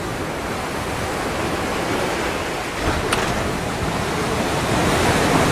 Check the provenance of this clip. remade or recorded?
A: recorded